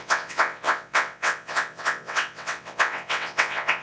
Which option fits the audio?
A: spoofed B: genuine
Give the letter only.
A